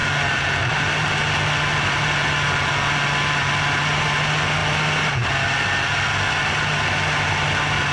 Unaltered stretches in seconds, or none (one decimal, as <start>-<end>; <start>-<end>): 0.0-7.9